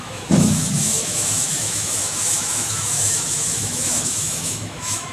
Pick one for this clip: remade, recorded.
remade